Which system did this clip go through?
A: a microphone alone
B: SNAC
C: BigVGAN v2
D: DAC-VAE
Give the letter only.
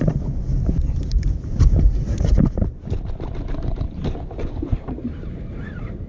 C